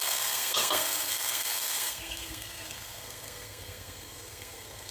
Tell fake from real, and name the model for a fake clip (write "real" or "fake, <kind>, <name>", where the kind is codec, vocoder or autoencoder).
fake, codec, SNAC